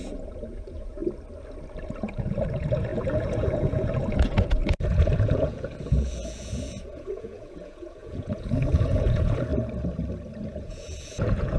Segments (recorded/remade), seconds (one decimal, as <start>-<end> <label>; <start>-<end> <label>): 0.0-1.0 remade; 1.0-1.8 recorded; 1.8-9.5 remade; 9.5-10.4 recorded; 10.4-11.6 remade